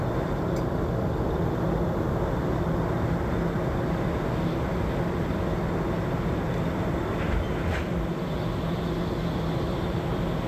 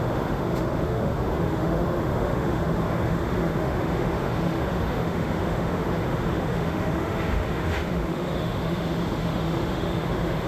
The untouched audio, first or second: first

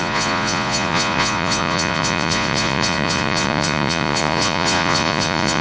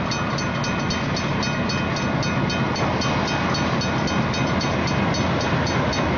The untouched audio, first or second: second